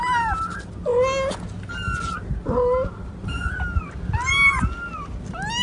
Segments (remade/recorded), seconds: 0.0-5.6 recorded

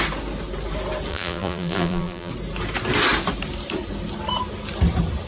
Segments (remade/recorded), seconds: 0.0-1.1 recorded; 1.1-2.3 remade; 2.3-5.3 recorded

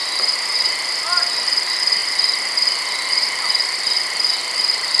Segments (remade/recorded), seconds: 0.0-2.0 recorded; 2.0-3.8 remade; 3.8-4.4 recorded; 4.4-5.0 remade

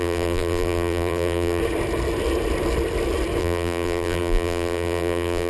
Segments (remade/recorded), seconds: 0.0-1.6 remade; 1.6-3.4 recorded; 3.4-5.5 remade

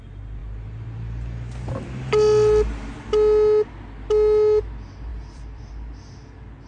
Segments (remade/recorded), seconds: 0.0-5.1 recorded; 5.1-5.7 remade; 5.7-6.7 recorded

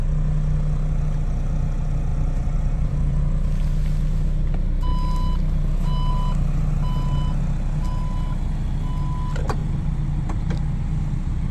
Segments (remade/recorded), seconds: 0.0-2.1 recorded; 2.1-3.2 remade; 3.2-9.6 recorded; 9.6-10.4 remade; 10.4-11.5 recorded

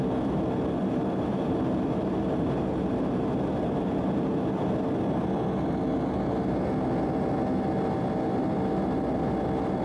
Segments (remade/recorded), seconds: 0.0-0.8 recorded; 0.8-4.7 remade; 4.7-9.8 recorded